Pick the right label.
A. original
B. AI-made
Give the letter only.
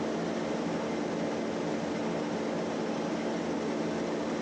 A